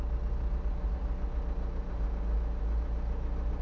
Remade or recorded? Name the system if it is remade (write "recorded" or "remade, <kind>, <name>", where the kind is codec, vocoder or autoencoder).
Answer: recorded